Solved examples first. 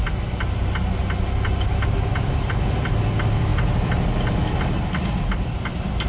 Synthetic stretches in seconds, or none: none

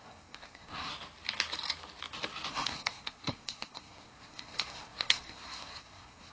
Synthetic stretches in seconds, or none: 0.0-0.9 (codec, SNAC); 2.5-6.3

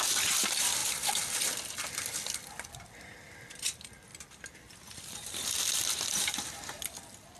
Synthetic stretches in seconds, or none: none

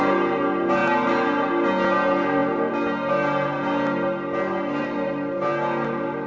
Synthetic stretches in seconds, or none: none

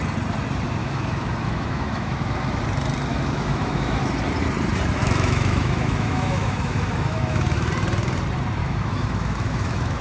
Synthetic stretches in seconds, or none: 0.8-2.6 (autoencoder, DAC-VAE); 3.1-4.0; 5.0-7.7; 8.6-10.0

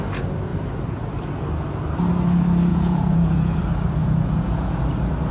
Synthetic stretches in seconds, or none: 2.7-3.6 (vocoder, Vocos); 4.0-4.8

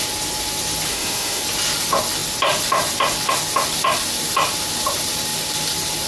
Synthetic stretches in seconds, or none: 0.9-1.4 (autoencoder, DAC-VAE)

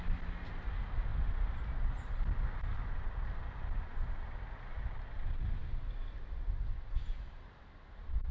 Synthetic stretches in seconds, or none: 2.7-3.3 (vocoder, BigVGAN v2); 5.6-7.0